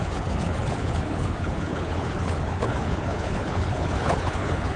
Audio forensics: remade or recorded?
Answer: remade